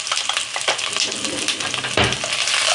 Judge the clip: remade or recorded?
recorded